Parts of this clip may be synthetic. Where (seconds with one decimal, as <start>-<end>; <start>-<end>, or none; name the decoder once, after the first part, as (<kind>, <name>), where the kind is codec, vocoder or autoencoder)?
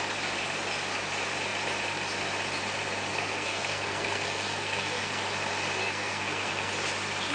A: 3.1-5.2 (codec, SNAC); 5.8-6.7